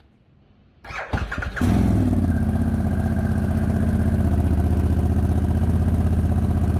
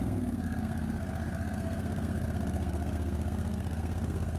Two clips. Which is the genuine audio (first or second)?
first